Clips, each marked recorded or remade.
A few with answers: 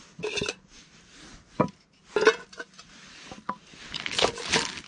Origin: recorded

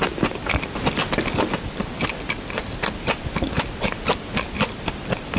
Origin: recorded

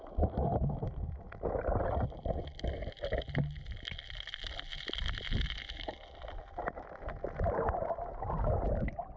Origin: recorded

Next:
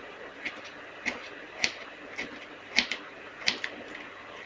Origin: recorded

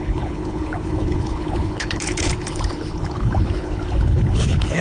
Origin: remade